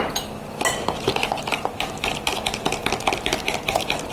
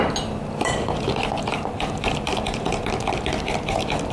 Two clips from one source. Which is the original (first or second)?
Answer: first